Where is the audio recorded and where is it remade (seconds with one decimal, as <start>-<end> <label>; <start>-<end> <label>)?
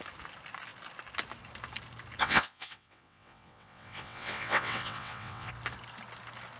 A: 0.0-2.2 recorded; 2.2-5.5 remade; 5.5-6.6 recorded